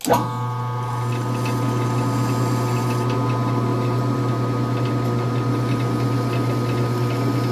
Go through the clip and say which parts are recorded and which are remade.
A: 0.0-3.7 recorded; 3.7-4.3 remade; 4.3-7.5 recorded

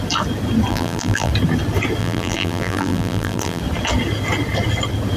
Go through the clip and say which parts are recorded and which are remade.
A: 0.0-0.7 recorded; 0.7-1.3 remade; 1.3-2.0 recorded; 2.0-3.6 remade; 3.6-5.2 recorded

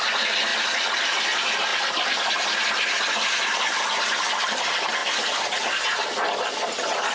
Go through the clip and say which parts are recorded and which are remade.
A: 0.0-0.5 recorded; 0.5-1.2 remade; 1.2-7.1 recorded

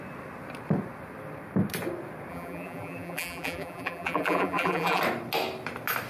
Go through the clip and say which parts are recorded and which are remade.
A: 0.0-2.3 recorded; 2.3-5.0 remade; 5.0-6.1 recorded

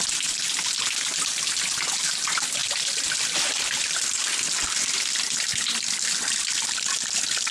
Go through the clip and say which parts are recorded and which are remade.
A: 0.0-2.6 recorded; 2.6-5.1 remade; 5.1-7.5 recorded

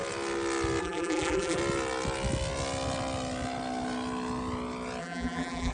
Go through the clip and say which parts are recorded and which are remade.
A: 0.0-0.8 recorded; 0.8-1.6 remade; 1.6-5.0 recorded; 5.0-5.7 remade